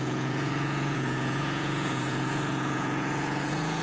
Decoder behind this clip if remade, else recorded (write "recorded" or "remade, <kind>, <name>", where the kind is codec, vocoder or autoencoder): remade, vocoder, Vocos